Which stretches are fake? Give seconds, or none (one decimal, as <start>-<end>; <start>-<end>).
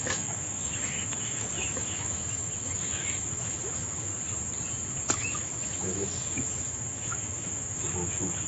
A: 0.0-4.1; 4.9-8.5